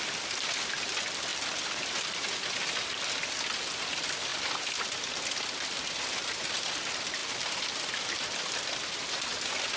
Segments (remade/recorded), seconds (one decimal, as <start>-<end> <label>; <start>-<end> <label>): 0.0-9.8 recorded